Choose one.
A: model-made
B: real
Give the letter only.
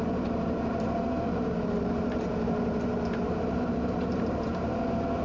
A